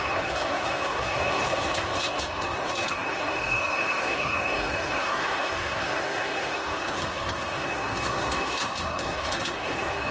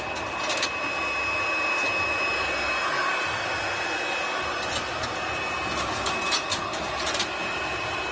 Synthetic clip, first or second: first